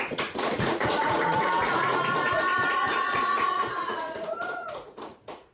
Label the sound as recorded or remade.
remade